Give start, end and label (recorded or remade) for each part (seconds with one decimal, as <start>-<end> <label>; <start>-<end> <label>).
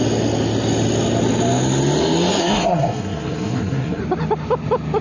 0.0-2.4 recorded; 2.4-4.0 remade; 4.0-5.0 recorded